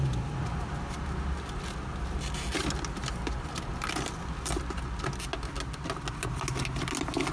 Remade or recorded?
recorded